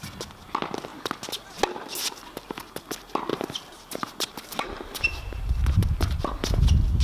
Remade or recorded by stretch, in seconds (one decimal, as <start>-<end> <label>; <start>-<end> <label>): 0.0-3.3 recorded; 3.3-6.2 remade; 6.2-7.0 recorded